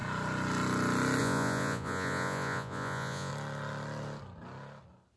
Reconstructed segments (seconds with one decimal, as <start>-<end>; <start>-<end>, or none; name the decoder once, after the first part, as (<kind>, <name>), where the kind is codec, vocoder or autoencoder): 1.2-3.3 (vocoder, Vocos)